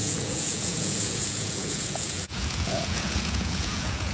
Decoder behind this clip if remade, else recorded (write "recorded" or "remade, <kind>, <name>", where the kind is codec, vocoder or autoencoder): remade, vocoder, Vocos